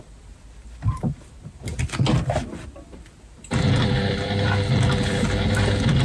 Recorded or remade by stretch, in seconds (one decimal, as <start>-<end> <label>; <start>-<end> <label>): 0.0-1.7 remade; 1.7-2.5 recorded; 2.5-6.0 remade